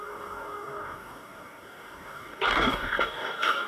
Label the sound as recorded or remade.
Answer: remade